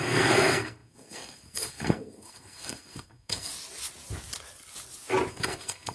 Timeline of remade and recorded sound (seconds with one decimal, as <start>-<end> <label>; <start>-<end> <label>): 0.0-3.5 remade; 3.5-5.3 recorded; 5.3-5.9 remade